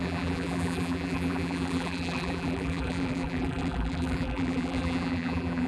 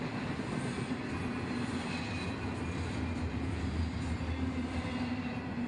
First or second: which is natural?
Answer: second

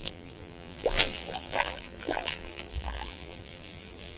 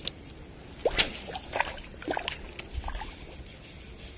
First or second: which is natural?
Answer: second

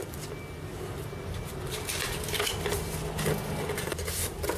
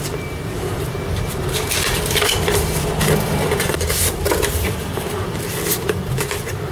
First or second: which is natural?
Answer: first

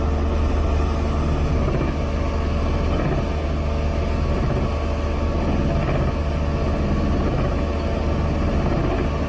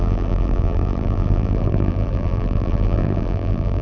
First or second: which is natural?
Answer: first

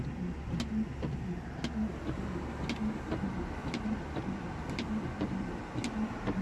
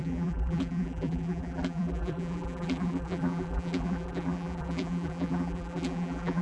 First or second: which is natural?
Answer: first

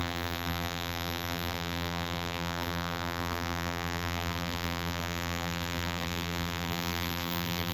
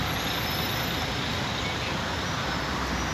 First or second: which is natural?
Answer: second